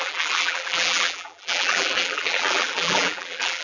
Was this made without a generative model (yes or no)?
no